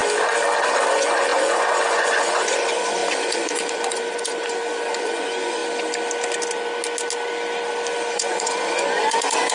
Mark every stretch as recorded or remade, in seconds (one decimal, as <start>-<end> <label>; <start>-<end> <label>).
0.0-0.9 recorded; 0.9-5.6 remade; 5.6-8.1 recorded; 8.1-9.5 remade